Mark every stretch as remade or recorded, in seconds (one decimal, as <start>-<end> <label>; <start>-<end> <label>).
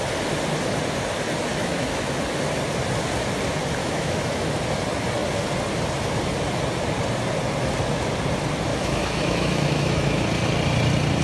0.0-1.5 recorded; 1.5-2.0 remade; 2.0-3.8 recorded; 3.8-4.5 remade; 4.5-8.7 recorded; 8.7-10.2 remade; 10.2-11.2 recorded